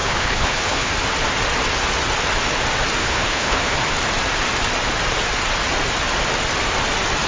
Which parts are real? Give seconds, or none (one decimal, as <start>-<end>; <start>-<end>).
0.9-3.0; 3.8-7.3